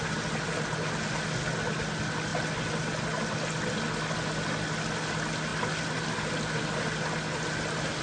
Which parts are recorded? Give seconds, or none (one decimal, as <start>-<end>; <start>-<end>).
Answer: 0.0-8.0